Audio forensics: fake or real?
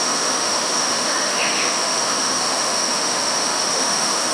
fake